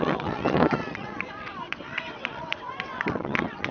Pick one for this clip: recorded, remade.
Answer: remade